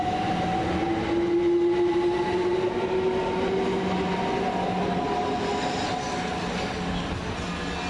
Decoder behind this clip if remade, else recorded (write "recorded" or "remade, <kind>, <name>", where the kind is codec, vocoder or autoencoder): recorded